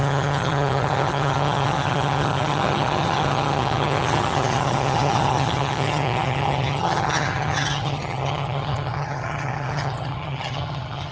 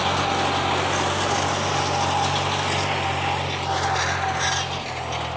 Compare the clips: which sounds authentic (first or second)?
second